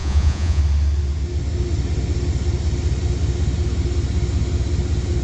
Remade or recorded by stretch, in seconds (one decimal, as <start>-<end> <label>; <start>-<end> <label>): 0.0-0.6 remade; 0.6-5.2 recorded

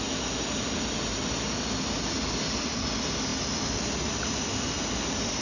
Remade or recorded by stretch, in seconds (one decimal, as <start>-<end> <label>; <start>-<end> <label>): 0.0-5.4 recorded

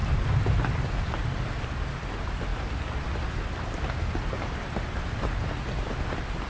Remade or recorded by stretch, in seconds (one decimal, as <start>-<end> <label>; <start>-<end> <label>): 0.0-6.5 recorded

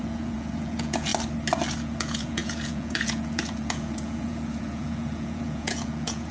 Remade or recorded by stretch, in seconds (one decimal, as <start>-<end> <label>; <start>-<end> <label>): 0.0-1.1 remade; 1.1-1.8 recorded; 1.8-6.3 remade

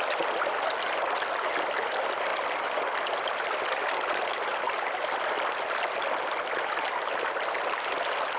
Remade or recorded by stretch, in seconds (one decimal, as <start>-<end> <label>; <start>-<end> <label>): 0.0-8.4 recorded

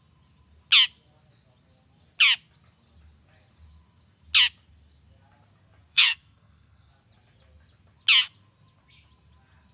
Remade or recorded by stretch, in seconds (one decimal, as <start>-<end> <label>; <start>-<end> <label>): 0.0-5.9 recorded; 5.9-6.9 remade; 6.9-9.7 recorded

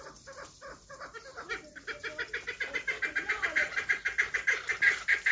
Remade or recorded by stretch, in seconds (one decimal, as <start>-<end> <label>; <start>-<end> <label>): 0.0-5.3 recorded